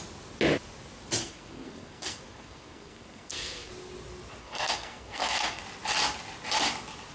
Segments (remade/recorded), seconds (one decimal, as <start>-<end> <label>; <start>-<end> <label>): 0.0-1.2 recorded; 1.2-3.7 remade; 3.7-4.4 recorded; 4.4-5.6 remade; 5.6-7.1 recorded